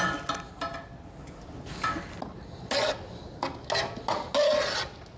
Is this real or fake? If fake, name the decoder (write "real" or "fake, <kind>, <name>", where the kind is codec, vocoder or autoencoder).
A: real